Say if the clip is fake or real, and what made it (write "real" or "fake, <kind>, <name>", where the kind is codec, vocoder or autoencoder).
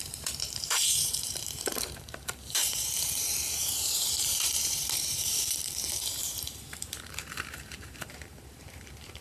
fake, vocoder, BigVGAN v2